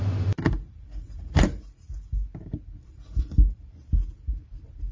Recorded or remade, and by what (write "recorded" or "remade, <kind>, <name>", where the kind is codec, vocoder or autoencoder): remade, vocoder, BigVGAN v2